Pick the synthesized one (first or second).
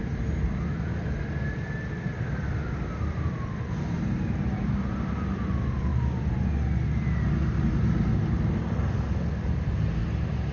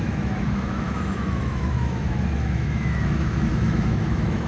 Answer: second